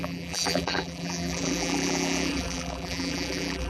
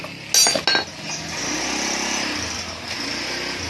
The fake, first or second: first